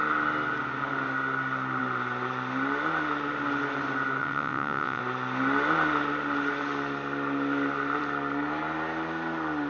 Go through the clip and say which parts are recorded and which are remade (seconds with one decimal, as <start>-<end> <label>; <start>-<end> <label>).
0.0-4.2 recorded; 4.2-5.0 remade; 5.0-9.7 recorded